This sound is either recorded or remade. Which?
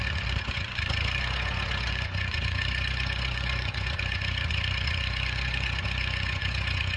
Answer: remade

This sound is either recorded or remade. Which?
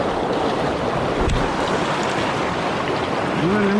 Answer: recorded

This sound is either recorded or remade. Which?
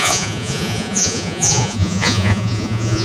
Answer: remade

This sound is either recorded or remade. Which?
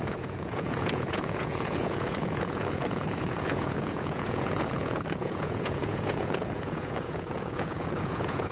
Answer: remade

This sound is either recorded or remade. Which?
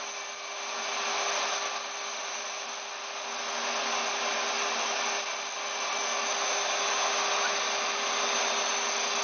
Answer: recorded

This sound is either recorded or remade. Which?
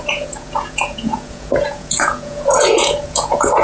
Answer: remade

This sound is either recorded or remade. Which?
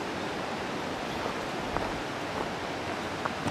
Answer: recorded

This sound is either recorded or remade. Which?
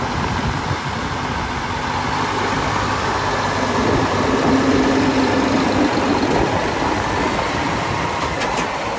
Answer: recorded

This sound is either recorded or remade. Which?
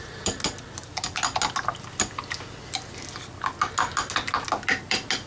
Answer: recorded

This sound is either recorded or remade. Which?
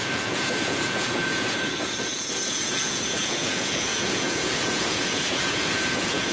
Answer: remade